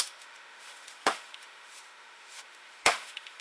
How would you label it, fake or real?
fake